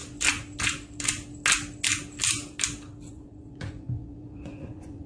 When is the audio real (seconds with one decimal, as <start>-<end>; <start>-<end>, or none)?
0.0-3.1